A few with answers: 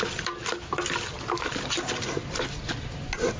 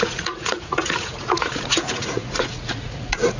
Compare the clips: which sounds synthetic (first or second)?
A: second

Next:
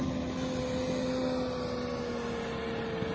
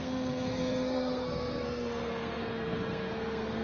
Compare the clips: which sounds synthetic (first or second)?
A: second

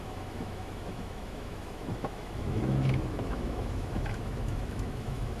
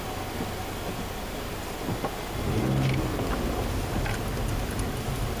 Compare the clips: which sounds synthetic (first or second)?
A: first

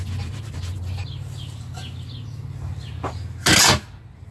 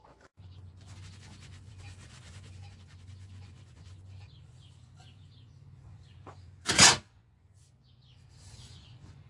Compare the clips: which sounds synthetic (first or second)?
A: second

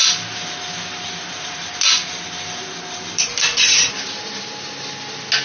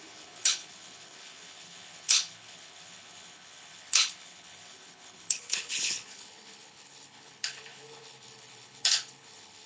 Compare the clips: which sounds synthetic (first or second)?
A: second